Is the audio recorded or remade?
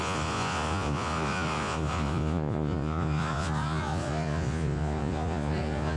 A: remade